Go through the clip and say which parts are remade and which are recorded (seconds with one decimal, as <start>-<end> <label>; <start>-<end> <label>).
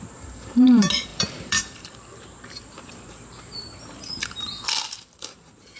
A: 0.0-5.8 remade